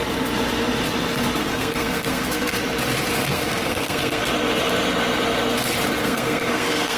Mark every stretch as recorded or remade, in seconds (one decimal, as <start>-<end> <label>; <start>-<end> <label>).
0.0-1.4 recorded; 1.4-2.6 remade; 2.6-3.3 recorded; 3.3-4.3 remade; 4.3-6.0 recorded; 6.0-7.0 remade